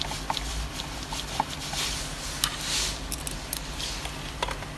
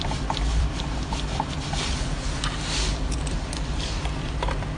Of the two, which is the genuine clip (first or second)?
first